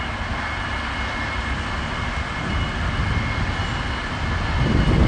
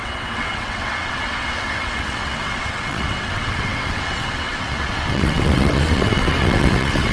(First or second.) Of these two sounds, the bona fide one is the first